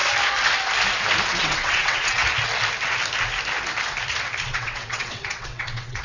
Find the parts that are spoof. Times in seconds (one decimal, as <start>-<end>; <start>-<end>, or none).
1.4-2.2; 4.5-6.0